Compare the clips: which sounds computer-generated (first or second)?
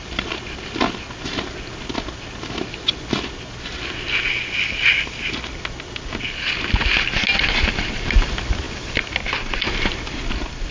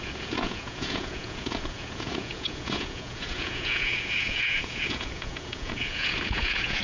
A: second